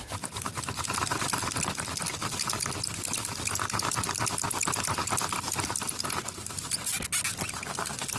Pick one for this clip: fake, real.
real